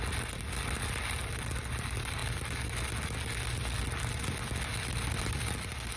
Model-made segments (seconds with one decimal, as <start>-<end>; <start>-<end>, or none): none

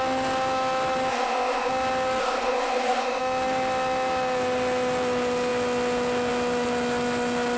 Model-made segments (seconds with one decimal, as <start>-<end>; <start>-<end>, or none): 1.1-1.7; 2.2-3.2